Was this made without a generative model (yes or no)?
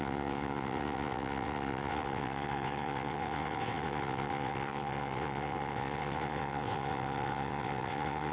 no